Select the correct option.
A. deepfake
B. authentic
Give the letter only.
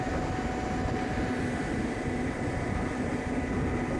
B